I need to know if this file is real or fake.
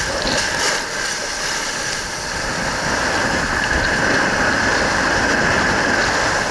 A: real